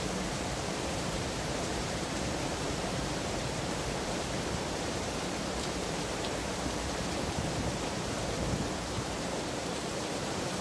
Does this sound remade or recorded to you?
remade